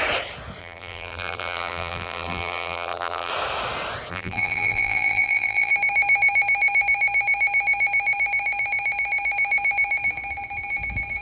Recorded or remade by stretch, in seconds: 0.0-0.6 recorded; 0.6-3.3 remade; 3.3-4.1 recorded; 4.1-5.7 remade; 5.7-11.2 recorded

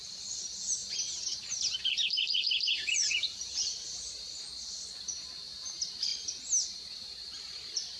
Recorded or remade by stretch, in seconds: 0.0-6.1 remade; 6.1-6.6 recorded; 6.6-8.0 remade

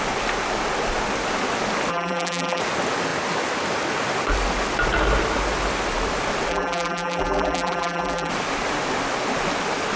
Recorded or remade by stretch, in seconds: 0.0-1.9 recorded; 1.9-2.6 remade; 2.6-6.5 recorded; 6.5-8.3 remade; 8.3-10.0 recorded

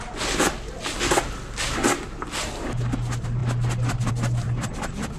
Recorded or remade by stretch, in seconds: 0.0-5.2 recorded

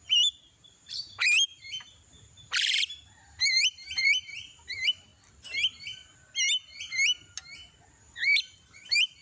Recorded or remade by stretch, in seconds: 0.0-5.1 remade; 5.1-8.0 recorded; 8.0-9.2 remade

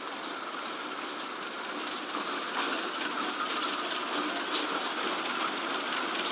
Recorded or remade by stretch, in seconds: 0.0-6.3 recorded

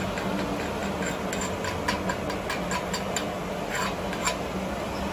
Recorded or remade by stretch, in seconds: 0.0-5.1 recorded

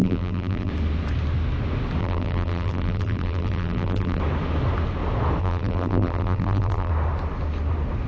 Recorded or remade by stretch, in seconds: 0.0-0.7 remade; 0.7-2.0 recorded; 2.0-4.2 remade; 4.2-5.4 recorded; 5.4-6.9 remade; 6.9-8.1 recorded